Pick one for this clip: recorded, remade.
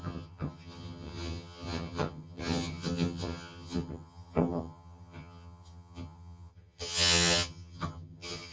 remade